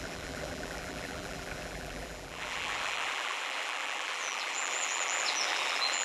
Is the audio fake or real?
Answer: fake